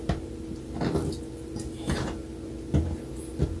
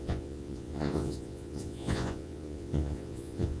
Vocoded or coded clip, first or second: second